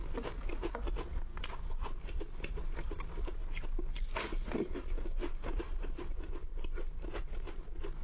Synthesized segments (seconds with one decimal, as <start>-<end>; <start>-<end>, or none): 1.3-6.1